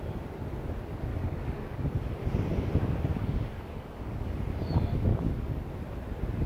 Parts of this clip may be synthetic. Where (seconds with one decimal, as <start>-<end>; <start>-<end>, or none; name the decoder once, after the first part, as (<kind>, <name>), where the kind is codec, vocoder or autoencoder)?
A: 1.1-2.1 (codec, DAC); 3.1-4.4; 5.1-5.7

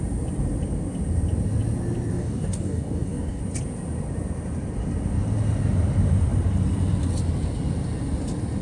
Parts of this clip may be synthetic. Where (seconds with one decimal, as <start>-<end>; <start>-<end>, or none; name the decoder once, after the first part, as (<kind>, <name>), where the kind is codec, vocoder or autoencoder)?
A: 2.1-3.4 (codec, DAC)

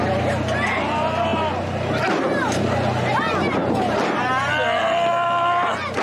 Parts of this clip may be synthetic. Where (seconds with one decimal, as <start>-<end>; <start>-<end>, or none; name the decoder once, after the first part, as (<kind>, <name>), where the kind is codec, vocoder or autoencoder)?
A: none

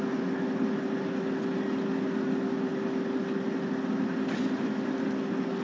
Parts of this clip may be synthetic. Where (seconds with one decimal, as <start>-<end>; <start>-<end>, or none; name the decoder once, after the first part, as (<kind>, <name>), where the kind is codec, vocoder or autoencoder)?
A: none

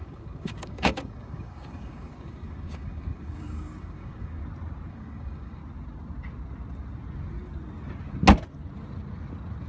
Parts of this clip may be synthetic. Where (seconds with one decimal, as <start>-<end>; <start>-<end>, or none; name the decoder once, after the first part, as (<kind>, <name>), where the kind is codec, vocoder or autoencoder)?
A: 0.0-4.4 (codec, DAC); 4.9-5.6

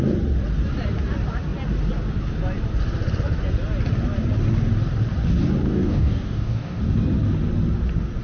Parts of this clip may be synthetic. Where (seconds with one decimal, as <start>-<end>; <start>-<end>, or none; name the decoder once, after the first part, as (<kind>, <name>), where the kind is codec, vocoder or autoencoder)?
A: 5.7-6.8 (codec, DAC)

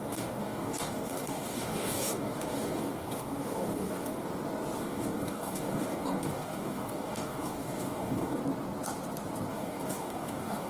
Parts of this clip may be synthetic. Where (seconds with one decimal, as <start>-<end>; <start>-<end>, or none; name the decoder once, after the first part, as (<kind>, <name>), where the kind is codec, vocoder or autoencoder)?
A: 0.0-4.3 (codec, DAC); 4.8-8.4; 9.5-10.7

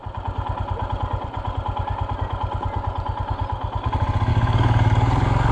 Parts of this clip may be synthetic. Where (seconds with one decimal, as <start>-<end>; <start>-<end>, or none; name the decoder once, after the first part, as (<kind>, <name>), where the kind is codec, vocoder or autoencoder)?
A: 4.3-5.5 (codec, DAC)